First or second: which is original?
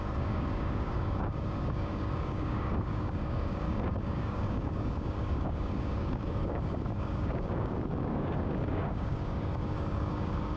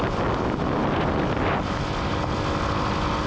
second